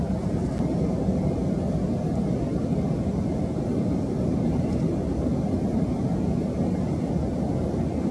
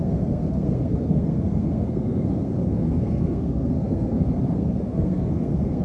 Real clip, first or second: first